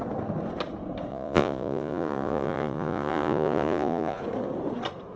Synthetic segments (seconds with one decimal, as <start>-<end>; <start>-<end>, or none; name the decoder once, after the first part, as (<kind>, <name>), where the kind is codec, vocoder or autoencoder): 1.1-4.2 (vocoder, Vocos)